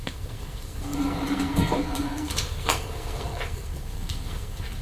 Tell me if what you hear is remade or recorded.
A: remade